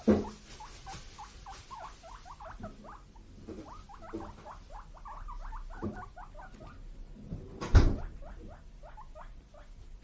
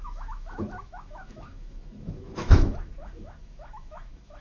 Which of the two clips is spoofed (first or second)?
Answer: second